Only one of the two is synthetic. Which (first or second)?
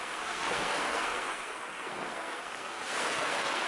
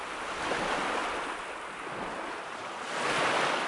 first